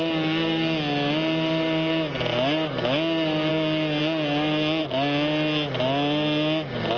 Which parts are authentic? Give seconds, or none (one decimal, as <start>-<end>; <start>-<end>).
0.0-7.0